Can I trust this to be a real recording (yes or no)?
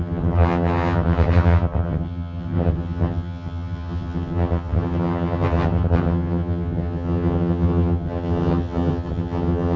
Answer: no